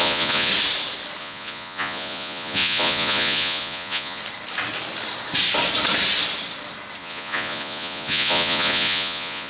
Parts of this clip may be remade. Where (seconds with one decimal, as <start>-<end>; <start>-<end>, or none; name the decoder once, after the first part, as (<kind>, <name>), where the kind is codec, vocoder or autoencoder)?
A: 0.0-0.5 (vocoder, Vocos); 1.2-4.2; 7.0-9.5